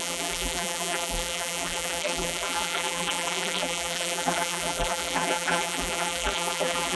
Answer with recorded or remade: remade